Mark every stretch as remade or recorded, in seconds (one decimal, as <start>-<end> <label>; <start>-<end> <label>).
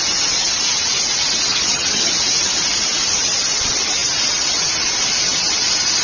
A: 0.0-1.5 recorded; 1.5-2.1 remade; 2.1-6.0 recorded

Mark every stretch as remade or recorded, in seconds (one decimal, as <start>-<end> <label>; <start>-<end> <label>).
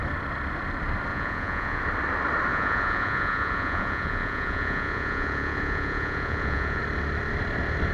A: 0.0-1.1 recorded; 1.1-1.8 remade; 1.8-2.5 recorded; 2.5-6.8 remade; 6.8-7.9 recorded